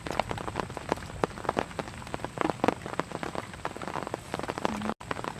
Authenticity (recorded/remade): recorded